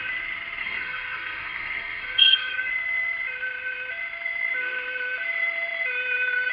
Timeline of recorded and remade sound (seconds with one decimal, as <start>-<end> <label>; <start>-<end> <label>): 0.0-0.6 recorded; 0.6-2.7 remade; 2.7-6.5 recorded